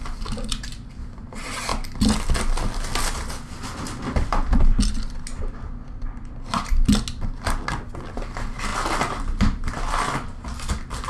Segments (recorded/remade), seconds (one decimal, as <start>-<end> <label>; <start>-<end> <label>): 0.0-11.1 recorded

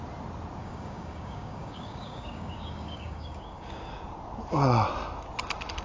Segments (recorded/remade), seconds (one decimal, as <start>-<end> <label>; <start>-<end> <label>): 0.0-0.6 recorded; 0.6-3.9 remade; 3.9-5.8 recorded

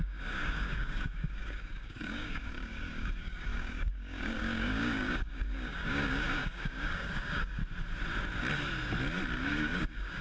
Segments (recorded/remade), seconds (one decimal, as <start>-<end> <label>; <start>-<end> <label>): 0.0-7.6 remade; 7.6-9.5 recorded; 9.5-10.2 remade